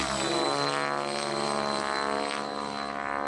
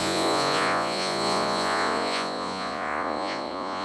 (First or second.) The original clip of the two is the first